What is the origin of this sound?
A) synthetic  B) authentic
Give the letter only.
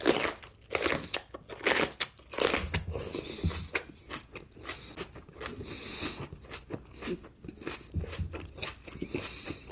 B